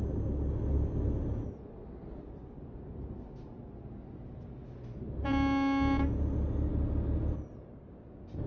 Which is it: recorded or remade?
recorded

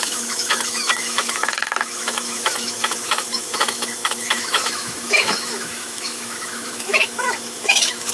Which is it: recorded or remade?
remade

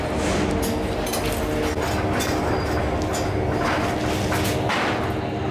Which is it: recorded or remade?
recorded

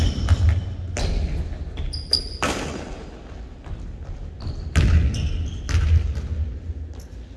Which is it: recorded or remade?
recorded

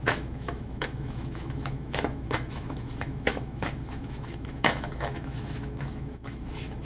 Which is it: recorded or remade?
remade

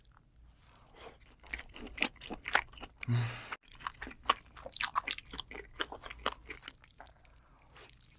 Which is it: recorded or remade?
recorded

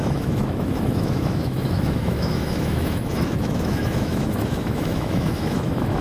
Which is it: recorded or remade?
remade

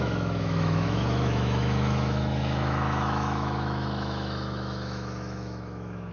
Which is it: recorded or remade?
remade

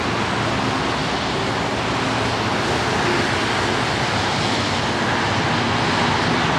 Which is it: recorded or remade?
recorded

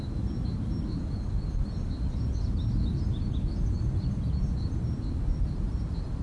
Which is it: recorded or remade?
recorded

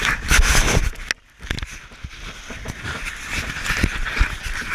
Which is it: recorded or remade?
recorded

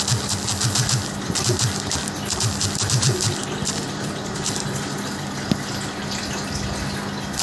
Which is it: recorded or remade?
recorded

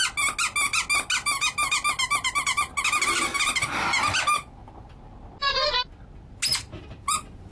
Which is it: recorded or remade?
recorded